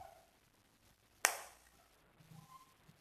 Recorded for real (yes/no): yes